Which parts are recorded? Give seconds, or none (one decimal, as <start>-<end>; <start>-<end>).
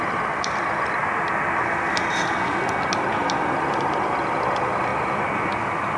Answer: 1.0-3.8; 4.9-6.0